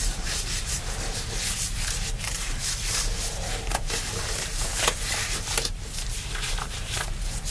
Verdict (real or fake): fake